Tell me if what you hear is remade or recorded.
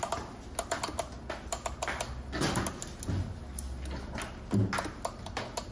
recorded